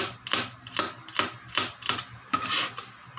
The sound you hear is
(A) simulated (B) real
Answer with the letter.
B